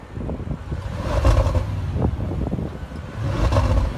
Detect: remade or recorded recorded